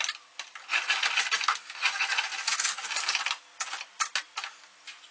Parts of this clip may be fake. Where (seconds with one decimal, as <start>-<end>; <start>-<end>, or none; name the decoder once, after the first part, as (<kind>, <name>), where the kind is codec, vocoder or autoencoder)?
none